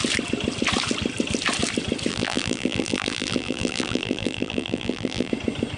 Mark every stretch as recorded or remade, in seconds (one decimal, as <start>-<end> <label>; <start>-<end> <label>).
0.0-2.1 recorded; 2.1-5.3 remade; 5.3-5.8 recorded